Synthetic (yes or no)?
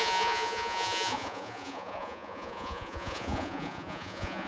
yes